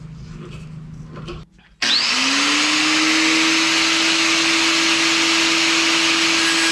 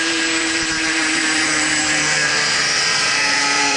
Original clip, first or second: first